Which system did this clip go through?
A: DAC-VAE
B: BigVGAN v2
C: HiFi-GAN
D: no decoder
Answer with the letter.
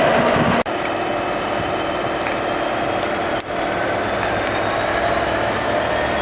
D